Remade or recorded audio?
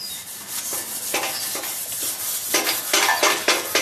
recorded